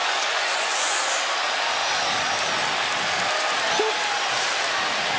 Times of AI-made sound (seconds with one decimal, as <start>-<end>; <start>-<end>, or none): 0.0-1.1